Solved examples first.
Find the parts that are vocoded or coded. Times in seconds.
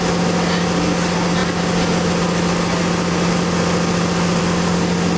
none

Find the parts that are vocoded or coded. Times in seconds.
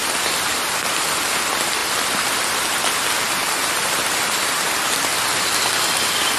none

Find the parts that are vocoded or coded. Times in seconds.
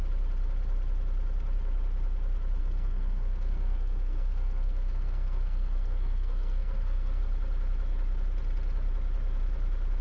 2.6-7.2 (codec, SNAC)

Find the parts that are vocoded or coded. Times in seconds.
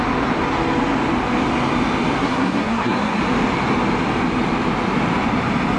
2.2-3.2 (codec, SNAC)